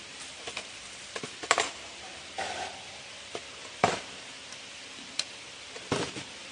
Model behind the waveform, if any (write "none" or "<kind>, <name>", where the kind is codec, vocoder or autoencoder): vocoder, BigVGAN v2